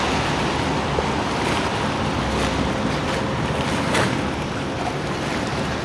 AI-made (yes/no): no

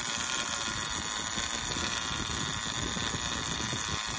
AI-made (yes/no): no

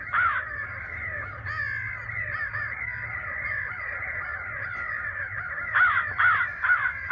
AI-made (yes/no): no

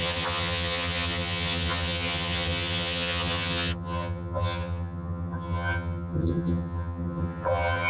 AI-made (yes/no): yes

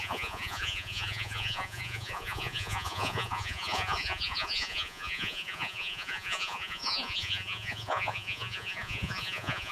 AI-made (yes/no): yes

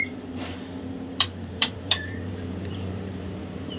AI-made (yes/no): yes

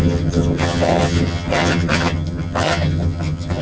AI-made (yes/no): yes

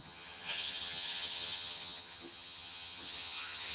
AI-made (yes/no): yes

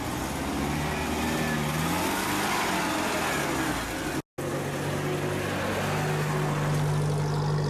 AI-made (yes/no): no